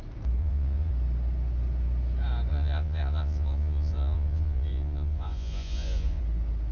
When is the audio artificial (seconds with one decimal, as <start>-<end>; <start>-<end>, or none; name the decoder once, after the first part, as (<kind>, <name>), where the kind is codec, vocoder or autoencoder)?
0.4-0.9 (vocoder, Vocos); 2.5-6.2